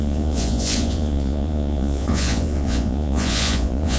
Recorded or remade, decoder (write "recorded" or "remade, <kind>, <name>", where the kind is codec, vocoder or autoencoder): remade, vocoder, Vocos